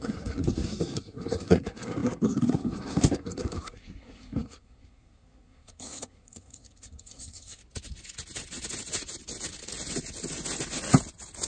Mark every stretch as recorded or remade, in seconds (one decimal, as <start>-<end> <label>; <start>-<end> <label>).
0.0-7.6 remade; 7.6-11.5 recorded